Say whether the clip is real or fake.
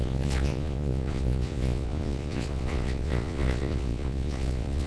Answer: fake